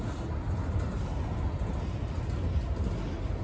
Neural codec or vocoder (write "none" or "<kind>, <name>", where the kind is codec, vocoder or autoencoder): none